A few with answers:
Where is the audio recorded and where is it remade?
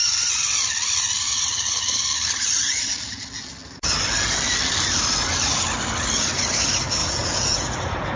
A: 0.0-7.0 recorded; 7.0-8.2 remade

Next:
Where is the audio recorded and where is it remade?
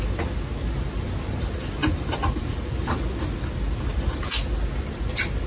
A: 0.0-5.5 recorded